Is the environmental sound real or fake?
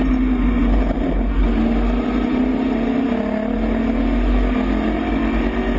real